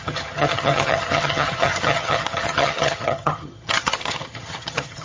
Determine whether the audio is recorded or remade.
remade